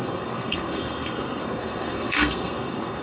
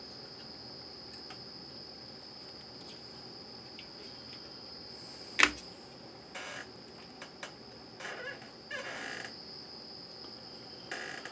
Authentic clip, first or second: second